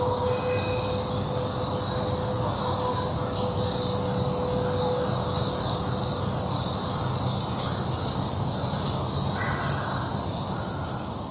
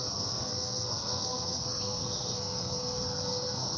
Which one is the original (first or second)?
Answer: first